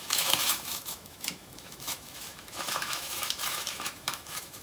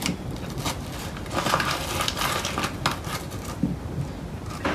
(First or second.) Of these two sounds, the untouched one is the second